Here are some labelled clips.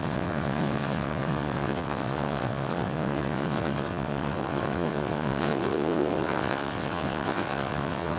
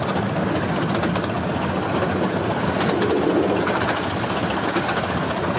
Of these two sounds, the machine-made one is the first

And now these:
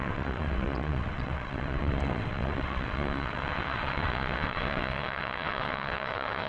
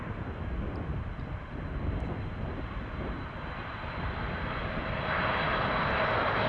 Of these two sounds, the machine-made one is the first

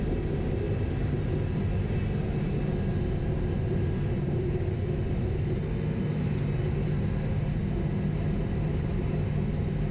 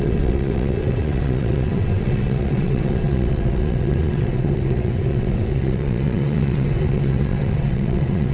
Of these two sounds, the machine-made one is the second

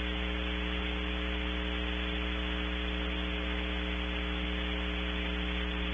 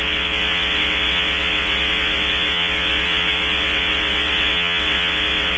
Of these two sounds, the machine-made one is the second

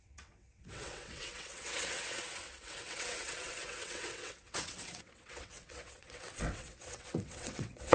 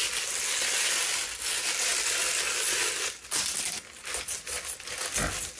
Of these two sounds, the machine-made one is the first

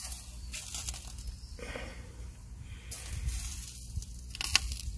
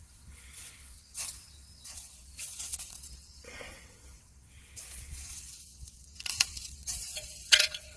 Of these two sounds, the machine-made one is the second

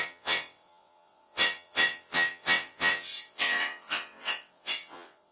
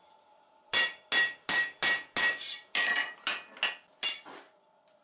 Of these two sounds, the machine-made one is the first